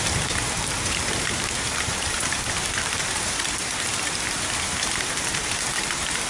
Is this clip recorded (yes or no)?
no